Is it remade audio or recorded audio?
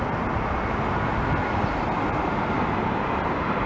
recorded